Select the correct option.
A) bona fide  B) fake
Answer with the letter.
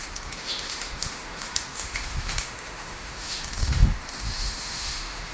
B